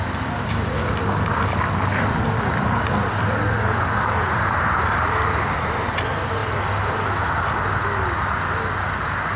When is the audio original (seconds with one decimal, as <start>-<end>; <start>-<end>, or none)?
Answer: 0.0-9.4